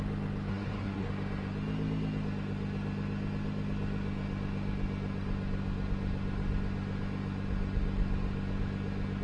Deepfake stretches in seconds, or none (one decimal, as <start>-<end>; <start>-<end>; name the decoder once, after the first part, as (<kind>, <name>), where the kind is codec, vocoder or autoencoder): 0.5-1.1 (codec, SNAC)

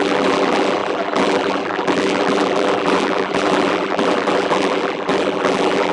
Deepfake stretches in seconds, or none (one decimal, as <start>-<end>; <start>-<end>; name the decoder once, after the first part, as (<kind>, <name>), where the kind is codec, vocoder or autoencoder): 0.0-5.9 (vocoder, BigVGAN v2)

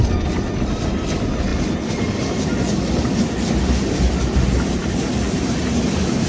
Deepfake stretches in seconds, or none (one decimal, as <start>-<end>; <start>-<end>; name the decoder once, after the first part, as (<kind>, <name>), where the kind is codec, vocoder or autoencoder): 4.8-5.6 (vocoder, BigVGAN v2)

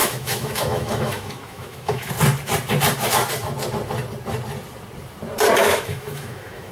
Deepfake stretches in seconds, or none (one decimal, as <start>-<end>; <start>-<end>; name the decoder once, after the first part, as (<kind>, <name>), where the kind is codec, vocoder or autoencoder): 0.0-2.1 (autoencoder, DAC-VAE); 5.6-6.7

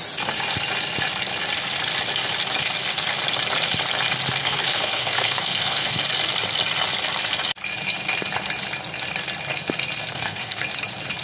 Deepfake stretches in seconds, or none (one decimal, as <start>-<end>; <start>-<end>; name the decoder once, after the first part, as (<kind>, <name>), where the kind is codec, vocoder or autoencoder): 4.4-6.0 (codec, SNAC); 10.1-10.6

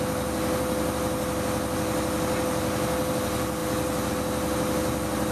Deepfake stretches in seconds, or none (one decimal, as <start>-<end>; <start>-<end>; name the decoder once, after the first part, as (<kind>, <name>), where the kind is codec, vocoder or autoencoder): none

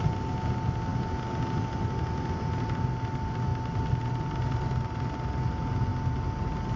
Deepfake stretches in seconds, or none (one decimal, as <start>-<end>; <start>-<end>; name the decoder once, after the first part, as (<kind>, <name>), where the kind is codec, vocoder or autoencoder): none

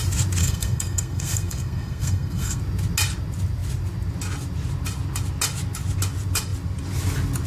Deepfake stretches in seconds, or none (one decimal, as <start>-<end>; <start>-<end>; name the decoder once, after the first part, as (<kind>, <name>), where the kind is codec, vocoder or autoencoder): 0.4-2.6 (codec, SNAC)